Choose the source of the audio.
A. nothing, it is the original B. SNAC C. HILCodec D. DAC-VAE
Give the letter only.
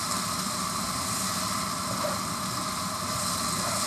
A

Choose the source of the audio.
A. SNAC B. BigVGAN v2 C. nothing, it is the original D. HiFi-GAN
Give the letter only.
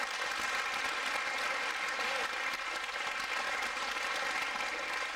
C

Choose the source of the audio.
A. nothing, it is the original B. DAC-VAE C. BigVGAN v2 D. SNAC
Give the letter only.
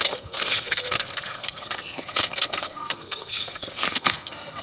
D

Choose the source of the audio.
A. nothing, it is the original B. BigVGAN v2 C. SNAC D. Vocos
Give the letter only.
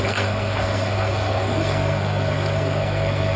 C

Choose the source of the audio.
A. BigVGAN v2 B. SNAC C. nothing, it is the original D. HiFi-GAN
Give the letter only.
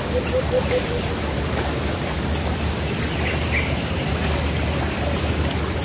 C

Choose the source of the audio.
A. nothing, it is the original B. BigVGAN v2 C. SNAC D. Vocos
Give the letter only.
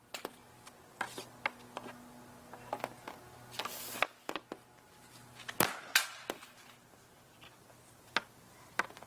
A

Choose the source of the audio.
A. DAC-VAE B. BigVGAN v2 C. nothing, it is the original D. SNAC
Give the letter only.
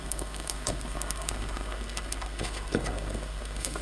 D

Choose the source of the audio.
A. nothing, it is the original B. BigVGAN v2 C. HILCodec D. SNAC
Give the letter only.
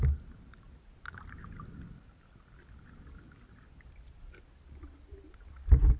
A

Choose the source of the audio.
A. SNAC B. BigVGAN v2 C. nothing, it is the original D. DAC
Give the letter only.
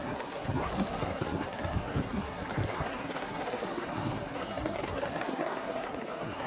A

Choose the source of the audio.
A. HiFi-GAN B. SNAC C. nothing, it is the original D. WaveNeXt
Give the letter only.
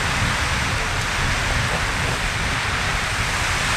C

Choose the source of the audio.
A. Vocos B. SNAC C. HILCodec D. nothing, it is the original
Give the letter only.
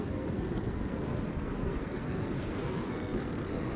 B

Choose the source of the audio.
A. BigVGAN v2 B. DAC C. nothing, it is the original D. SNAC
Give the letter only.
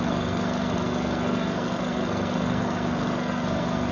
D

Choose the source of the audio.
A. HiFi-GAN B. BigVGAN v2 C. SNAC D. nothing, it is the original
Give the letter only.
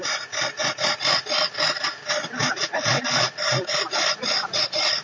D